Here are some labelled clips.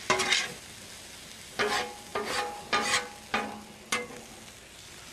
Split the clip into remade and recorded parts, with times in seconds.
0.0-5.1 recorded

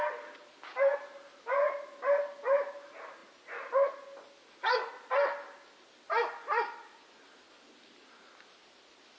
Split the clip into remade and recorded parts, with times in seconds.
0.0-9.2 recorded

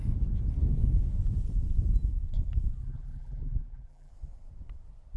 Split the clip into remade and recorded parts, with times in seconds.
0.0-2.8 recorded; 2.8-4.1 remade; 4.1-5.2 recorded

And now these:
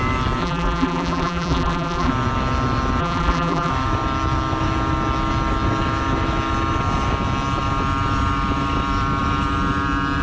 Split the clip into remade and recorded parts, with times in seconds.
0.0-0.4 recorded; 0.4-2.1 remade; 2.1-3.0 recorded; 3.0-3.7 remade; 3.7-10.2 recorded